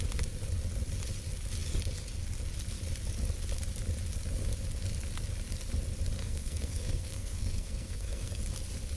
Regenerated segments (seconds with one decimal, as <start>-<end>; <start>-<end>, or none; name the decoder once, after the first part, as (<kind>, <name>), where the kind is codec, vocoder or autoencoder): 6.2-8.4 (codec, SNAC)